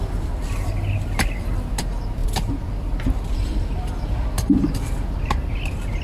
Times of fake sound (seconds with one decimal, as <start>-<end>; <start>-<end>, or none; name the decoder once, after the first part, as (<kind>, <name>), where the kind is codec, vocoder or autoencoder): none

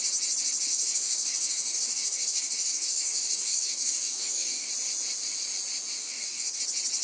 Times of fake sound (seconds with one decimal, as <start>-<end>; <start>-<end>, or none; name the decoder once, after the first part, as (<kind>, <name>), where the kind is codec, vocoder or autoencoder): 0.7-4.7 (codec, DAC); 6.0-6.6